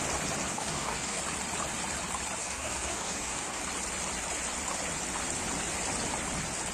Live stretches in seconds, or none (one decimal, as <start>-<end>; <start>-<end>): 0.0-0.5; 1.2-2.4; 3.6-6.7